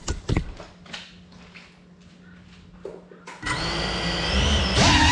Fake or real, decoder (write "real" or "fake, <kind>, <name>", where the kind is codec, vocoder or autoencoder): real